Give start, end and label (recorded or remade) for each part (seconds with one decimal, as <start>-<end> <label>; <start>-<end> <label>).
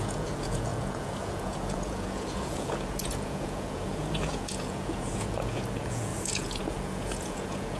0.0-7.8 remade